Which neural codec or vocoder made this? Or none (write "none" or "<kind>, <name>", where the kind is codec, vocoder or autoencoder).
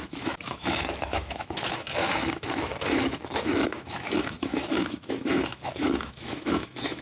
autoencoder, DAC-VAE